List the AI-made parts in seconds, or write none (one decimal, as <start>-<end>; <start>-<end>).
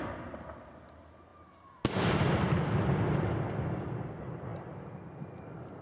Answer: none